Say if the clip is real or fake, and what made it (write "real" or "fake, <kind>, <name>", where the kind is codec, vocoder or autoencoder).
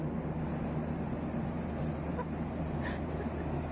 real